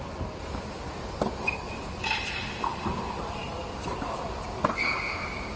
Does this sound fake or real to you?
real